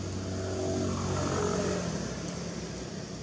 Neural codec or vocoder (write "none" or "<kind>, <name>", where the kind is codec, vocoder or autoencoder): none